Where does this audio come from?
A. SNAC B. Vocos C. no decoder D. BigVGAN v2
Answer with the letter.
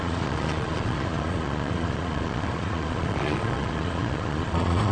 B